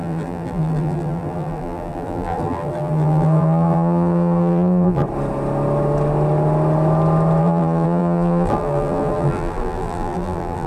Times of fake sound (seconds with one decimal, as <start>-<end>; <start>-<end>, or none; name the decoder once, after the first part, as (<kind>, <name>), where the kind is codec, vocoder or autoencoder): 0.0-5.0 (vocoder, BigVGAN v2); 7.4-10.7